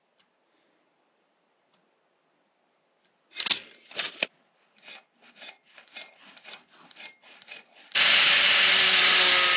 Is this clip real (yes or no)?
yes